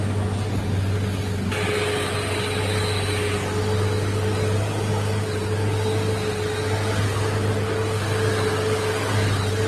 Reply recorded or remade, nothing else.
recorded